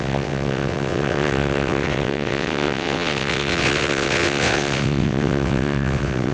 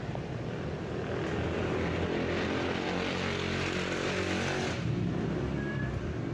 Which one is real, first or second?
second